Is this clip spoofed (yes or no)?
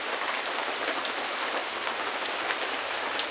no